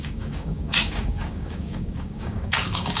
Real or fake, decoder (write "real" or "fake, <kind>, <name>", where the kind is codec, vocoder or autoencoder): fake, codec, DAC